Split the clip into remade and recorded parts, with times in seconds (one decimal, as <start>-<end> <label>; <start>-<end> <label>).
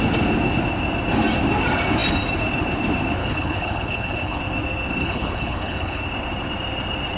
0.0-3.2 recorded; 3.2-4.4 remade; 4.4-5.0 recorded; 5.0-6.0 remade; 6.0-7.2 recorded